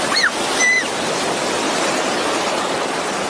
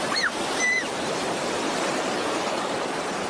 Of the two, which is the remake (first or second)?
second